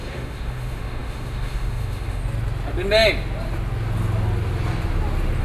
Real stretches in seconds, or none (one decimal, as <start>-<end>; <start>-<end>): 2.2-5.4

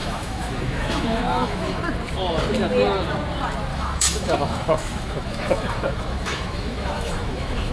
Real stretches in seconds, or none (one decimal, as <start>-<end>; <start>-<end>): 1.8-3.7

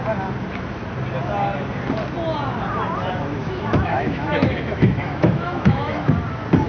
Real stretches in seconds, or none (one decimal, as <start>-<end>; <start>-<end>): 0.0-3.4; 6.1-6.7